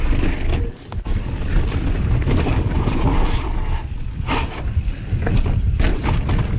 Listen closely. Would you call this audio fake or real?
real